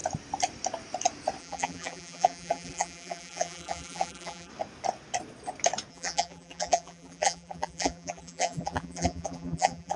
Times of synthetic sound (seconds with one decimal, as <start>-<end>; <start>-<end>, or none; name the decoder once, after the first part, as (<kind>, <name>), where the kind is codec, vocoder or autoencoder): 1.4-4.5 (vocoder, BigVGAN v2); 5.9-10.0